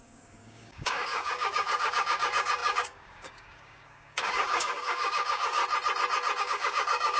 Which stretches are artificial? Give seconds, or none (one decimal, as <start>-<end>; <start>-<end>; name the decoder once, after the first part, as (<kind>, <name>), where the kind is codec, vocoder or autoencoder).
0.0-5.6 (codec, DAC); 6.4-7.2